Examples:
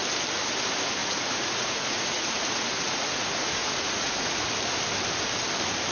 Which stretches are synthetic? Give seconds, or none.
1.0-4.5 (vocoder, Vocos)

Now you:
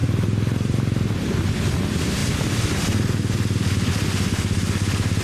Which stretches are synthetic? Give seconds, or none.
none

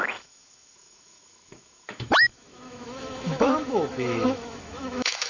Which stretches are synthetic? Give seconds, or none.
0.0-5.3 (autoencoder, DAC-VAE)

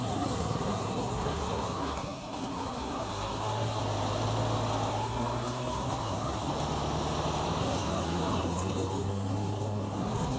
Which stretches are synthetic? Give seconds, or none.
0.0-3.8 (codec, SNAC); 4.9-6.5; 7.6-10.4

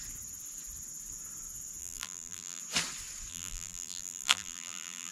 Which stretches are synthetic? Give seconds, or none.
1.8-2.6 (vocoder, BigVGAN v2); 3.3-5.1

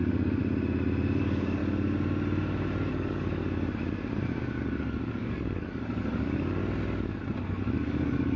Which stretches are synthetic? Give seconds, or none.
0.0-0.4 (codec, DAC); 1.2-1.6; 2.9-3.4; 4.6-6.6; 7.4-8.4

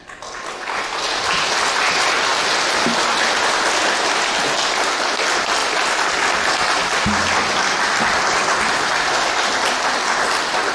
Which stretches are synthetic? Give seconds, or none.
none